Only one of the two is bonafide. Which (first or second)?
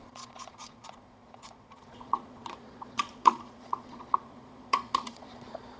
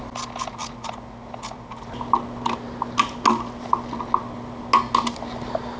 second